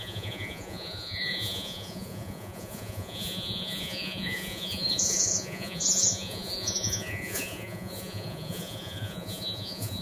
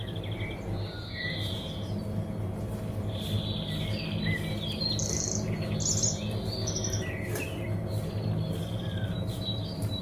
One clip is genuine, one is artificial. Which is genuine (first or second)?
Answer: second